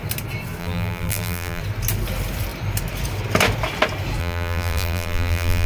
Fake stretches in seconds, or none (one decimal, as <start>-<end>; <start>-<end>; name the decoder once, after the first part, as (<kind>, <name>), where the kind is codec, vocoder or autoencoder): 0.6-1.6 (vocoder, BigVGAN v2); 4.2-5.7